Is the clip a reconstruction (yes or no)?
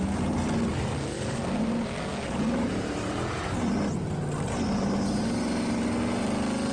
no